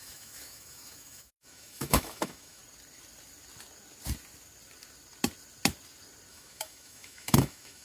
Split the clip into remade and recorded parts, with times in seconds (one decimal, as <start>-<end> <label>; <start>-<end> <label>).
0.0-2.6 remade; 2.6-6.3 recorded; 6.3-7.8 remade